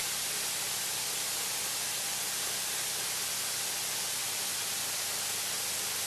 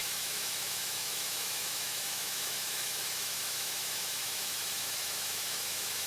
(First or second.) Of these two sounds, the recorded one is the first